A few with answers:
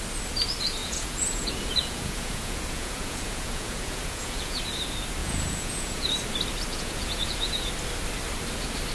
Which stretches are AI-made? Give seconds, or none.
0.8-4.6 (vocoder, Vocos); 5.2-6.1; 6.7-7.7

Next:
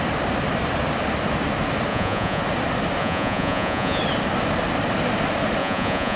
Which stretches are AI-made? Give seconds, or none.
1.9-2.4 (vocoder, Vocos); 3.0-4.0; 5.6-6.2